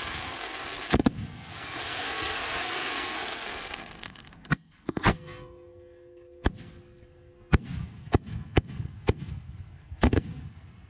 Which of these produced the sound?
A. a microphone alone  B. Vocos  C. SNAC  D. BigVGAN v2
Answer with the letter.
C